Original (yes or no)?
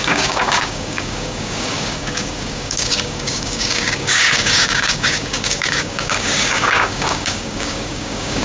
no